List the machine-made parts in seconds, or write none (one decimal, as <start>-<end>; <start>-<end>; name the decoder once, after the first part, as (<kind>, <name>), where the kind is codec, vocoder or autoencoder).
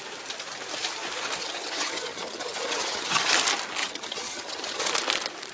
1.4-3.3 (vocoder, HiFi-GAN); 3.8-4.9